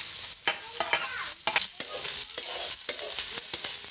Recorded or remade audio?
recorded